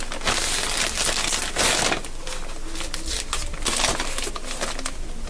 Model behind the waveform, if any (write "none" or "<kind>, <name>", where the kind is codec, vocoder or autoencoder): none